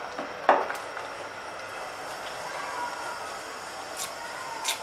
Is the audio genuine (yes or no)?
yes